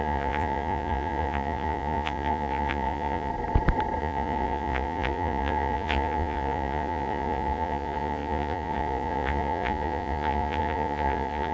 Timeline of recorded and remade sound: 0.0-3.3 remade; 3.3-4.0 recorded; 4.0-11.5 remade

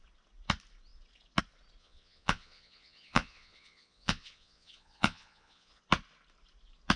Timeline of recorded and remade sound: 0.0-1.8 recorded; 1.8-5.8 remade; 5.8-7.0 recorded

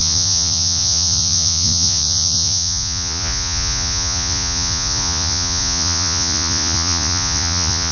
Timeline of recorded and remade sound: 0.0-7.9 remade

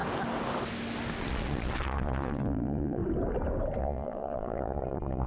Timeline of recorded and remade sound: 0.0-1.2 recorded; 1.2-3.0 remade; 3.0-3.8 recorded; 3.8-5.3 remade

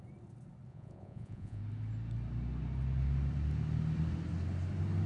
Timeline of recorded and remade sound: 0.0-0.7 recorded; 0.7-1.6 remade; 1.6-5.1 recorded

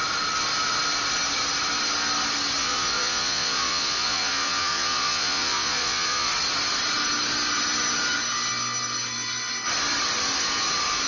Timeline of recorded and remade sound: 0.0-2.6 recorded; 2.6-6.3 remade; 6.3-11.1 recorded

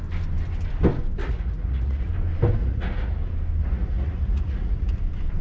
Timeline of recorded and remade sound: 0.0-1.2 recorded; 1.2-2.1 remade; 2.1-2.6 recorded; 2.6-3.2 remade; 3.2-3.6 recorded; 3.6-5.0 remade; 5.0-5.4 recorded